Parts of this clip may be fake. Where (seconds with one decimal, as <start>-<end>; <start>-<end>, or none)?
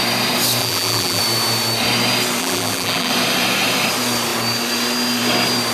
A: 0.6-1.2; 2.4-3.1